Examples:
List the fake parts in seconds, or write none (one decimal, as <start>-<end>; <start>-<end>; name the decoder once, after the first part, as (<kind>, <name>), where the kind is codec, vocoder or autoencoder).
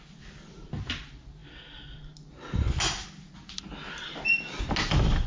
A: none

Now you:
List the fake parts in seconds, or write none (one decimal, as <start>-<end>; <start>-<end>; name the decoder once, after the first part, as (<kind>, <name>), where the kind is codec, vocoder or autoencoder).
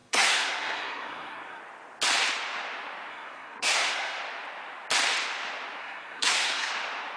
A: 0.0-1.6 (codec, SNAC); 3.1-4.2; 5.8-6.7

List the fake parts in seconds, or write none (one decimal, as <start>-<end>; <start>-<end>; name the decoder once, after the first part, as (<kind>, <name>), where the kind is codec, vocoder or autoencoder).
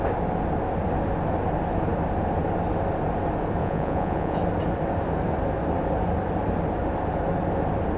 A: 3.6-4.4 (vocoder, Vocos)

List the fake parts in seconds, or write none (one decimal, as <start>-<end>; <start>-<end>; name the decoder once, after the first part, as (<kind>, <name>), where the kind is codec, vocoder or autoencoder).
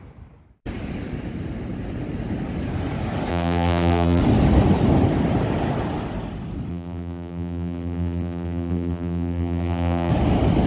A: 3.3-4.2 (vocoder, BigVGAN v2); 6.7-10.1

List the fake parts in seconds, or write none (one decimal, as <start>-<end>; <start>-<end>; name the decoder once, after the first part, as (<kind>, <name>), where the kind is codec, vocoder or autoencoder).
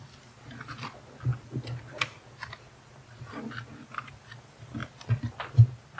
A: none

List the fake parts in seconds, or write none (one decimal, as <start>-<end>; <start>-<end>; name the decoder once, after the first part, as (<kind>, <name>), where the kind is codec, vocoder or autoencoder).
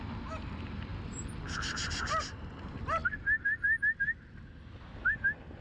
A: none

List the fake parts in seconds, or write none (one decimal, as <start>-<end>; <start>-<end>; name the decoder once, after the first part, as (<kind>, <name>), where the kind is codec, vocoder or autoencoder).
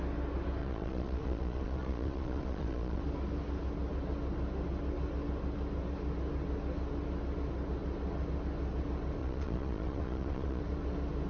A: 0.6-3.0 (vocoder, Vocos); 9.2-10.6